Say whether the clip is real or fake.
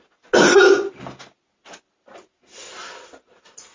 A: real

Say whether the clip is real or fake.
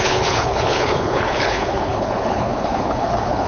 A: fake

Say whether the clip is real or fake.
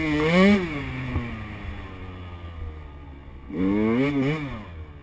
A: real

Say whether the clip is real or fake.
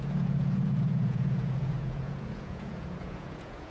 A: fake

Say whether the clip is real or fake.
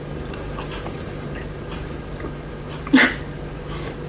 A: real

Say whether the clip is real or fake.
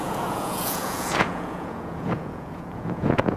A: fake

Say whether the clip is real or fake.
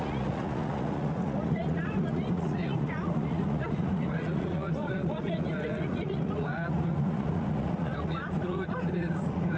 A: fake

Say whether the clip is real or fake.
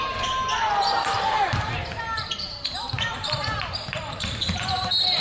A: fake